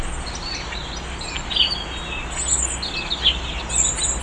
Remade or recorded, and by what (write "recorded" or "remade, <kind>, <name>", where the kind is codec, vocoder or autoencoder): recorded